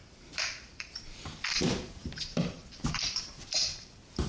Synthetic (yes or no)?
yes